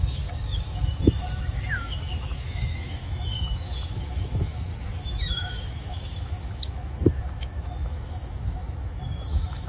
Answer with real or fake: fake